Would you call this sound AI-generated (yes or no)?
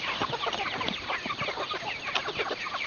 no